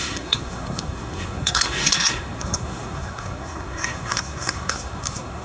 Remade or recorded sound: remade